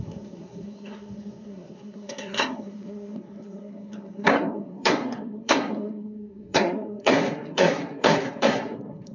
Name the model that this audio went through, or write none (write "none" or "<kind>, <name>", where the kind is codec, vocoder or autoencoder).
codec, SNAC